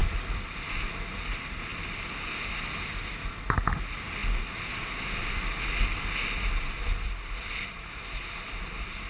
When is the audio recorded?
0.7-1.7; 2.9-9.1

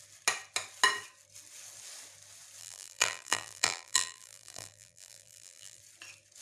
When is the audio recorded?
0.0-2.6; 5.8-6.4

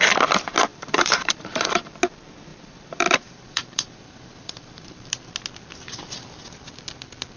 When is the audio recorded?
0.0-0.7; 1.9-2.5; 5.1-7.4

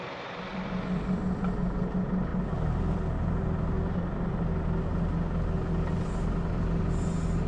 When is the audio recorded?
0.0-0.5; 1.8-7.5

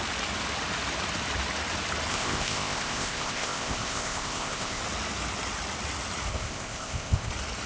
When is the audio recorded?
0.0-2.1; 4.8-6.3; 7.3-7.7